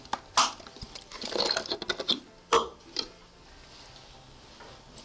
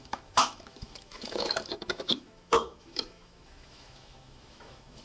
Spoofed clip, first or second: second